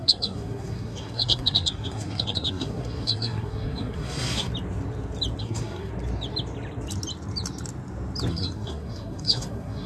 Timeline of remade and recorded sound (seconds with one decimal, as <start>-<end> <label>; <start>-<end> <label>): 0.0-4.5 remade; 4.5-5.4 recorded; 5.4-5.9 remade; 5.9-8.3 recorded; 8.3-9.9 remade